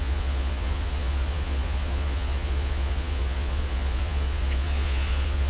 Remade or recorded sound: remade